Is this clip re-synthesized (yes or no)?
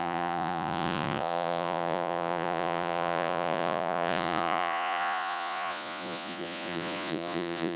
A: yes